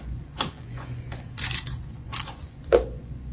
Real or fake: fake